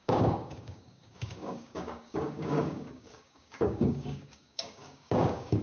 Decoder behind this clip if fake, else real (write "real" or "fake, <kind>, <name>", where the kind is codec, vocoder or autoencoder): fake, codec, DAC